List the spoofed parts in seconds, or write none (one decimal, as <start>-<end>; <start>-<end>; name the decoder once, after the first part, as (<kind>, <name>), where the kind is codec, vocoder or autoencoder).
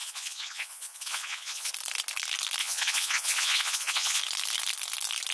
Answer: 0.0-1.7 (vocoder, Vocos); 2.6-4.2